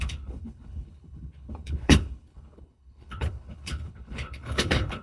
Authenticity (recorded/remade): remade